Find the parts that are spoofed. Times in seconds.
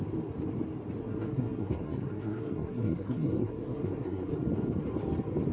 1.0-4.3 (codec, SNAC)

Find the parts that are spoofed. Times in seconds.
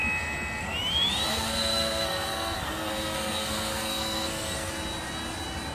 1.3-4.7 (codec, SNAC)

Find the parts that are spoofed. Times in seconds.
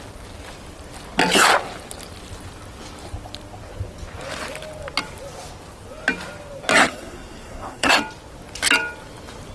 6.8-7.9 (codec, SNAC)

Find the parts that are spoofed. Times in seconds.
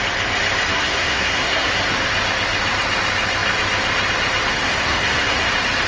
0.7-1.7 (codec, SNAC); 4.5-5.5